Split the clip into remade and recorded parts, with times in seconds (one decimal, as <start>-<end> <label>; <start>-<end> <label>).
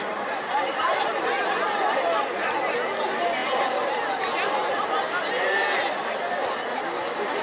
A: 0.0-7.4 recorded